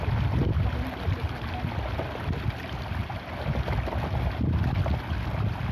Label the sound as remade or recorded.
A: recorded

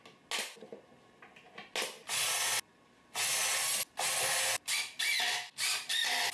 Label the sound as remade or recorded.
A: recorded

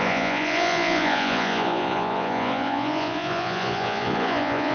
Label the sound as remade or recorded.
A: remade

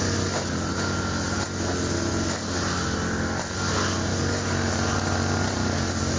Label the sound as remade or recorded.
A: recorded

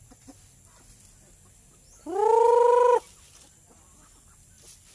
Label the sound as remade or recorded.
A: recorded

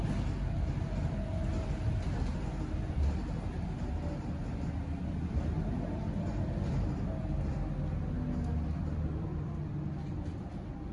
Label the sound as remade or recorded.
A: recorded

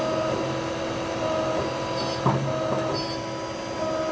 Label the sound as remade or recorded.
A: recorded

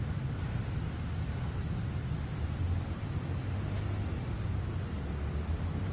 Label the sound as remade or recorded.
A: recorded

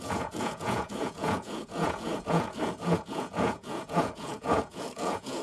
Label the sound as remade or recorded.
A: remade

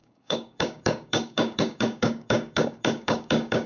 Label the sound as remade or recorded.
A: remade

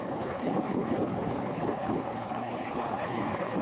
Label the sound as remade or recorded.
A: remade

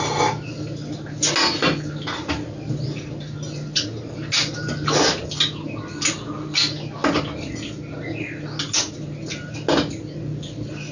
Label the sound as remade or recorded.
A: recorded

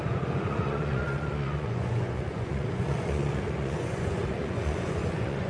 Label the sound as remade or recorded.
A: remade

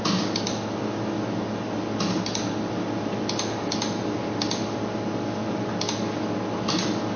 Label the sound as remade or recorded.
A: recorded